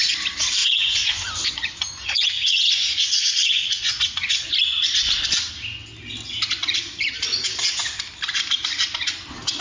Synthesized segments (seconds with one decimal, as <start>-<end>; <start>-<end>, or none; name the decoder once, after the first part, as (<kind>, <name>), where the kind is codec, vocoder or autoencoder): 0.6-4.5 (vocoder, Vocos)